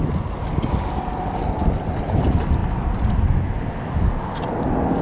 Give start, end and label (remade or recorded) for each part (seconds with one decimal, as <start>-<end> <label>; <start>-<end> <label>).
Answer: 0.0-5.0 recorded

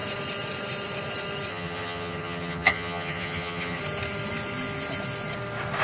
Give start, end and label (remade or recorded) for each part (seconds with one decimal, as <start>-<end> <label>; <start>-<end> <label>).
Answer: 0.0-1.5 recorded; 1.5-3.8 remade; 3.8-5.8 recorded